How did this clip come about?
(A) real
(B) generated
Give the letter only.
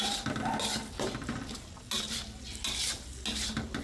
A